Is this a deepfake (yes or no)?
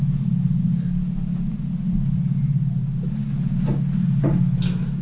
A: no